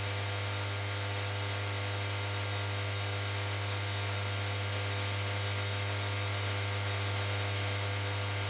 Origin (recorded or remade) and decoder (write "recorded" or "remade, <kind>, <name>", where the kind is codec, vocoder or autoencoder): recorded